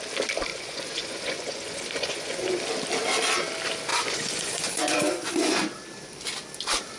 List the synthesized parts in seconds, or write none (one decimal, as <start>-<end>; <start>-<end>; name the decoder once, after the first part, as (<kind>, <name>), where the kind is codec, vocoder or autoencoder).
0.5-2.6 (vocoder, Vocos); 3.9-5.6